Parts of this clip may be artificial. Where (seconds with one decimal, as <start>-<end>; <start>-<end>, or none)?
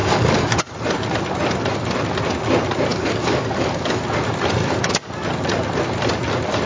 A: 0.0-0.6; 2.9-4.0